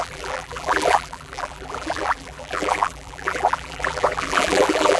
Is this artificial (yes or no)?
yes